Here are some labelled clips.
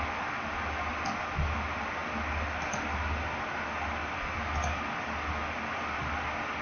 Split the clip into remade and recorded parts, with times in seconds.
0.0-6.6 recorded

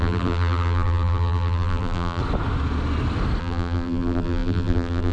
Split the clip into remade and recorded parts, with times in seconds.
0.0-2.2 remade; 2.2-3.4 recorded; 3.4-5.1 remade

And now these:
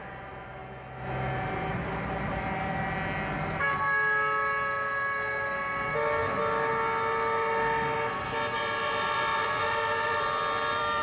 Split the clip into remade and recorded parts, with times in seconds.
0.0-9.3 recorded; 9.3-11.0 remade

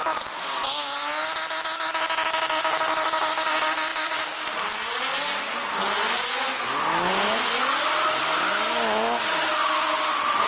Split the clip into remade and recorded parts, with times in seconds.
0.0-10.5 recorded

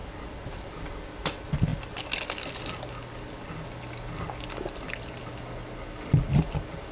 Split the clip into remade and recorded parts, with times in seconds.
0.0-0.7 remade; 0.7-6.9 recorded

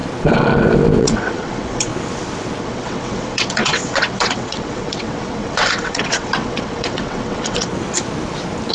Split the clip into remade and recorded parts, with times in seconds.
0.0-1.0 recorded; 1.0-1.9 remade; 1.9-2.6 recorded; 2.6-7.7 remade; 7.7-8.7 recorded

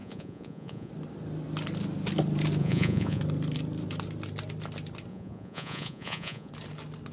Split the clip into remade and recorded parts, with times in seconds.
0.0-0.9 remade; 0.9-2.6 recorded; 2.6-3.2 remade; 3.2-5.1 recorded; 5.1-6.5 remade; 6.5-7.1 recorded